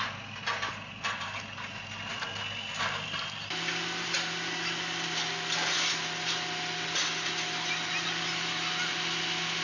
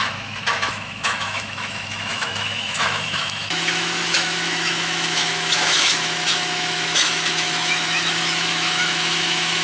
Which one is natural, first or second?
first